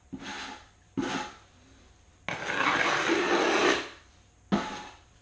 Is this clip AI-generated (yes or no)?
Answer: no